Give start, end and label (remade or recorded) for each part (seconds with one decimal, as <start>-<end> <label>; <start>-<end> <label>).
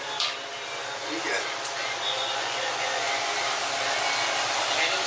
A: 0.0-1.8 recorded; 1.8-3.3 remade; 3.3-5.1 recorded